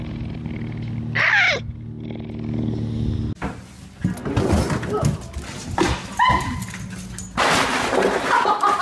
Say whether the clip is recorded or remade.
recorded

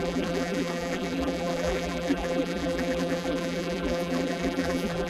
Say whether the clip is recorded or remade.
remade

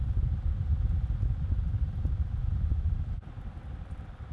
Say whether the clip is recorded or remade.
recorded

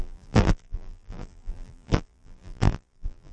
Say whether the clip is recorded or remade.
remade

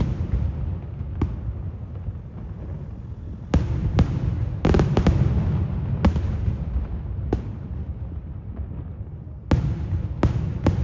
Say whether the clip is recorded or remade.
recorded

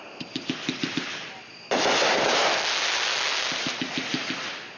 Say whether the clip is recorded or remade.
recorded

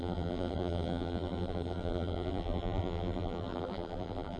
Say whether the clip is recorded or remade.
remade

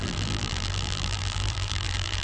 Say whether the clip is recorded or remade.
remade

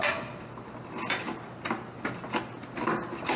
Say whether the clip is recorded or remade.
recorded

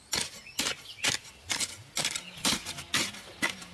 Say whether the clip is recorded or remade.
recorded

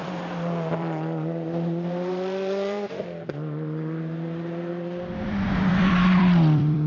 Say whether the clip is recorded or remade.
remade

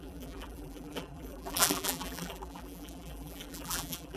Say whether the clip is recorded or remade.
remade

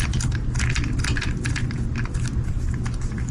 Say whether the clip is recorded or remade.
recorded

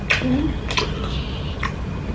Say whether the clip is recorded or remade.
recorded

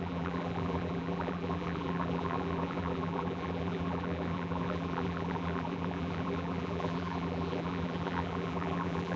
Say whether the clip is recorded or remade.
remade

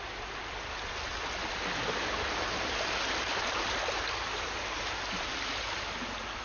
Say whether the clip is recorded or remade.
recorded